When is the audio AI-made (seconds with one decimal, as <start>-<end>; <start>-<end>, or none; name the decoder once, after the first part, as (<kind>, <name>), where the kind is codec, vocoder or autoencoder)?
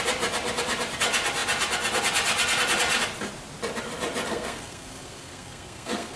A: 4.3-6.2 (codec, SNAC)